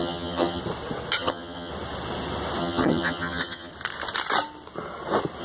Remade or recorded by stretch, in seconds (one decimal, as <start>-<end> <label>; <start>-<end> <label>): 0.0-0.6 remade; 0.6-1.2 recorded; 1.2-1.7 remade; 1.7-2.6 recorded; 2.6-3.7 remade; 3.7-5.4 recorded